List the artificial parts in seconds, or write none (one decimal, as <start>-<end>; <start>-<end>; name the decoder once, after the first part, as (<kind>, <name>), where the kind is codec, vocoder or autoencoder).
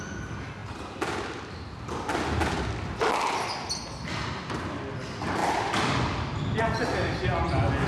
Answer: none